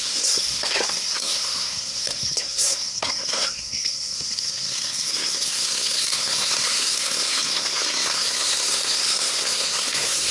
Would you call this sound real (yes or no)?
no